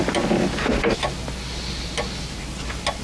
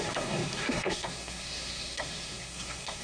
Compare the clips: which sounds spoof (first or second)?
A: second